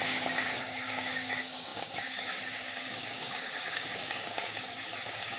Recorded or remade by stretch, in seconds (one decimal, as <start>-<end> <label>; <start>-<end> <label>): 0.0-5.4 remade